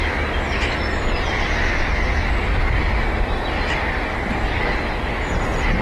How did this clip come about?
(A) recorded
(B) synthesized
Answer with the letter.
A